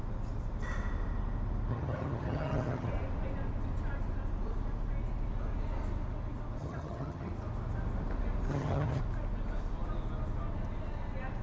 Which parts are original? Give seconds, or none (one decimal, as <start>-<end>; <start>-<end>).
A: 0.0-1.7; 2.9-6.6; 7.3-8.5; 9.0-11.4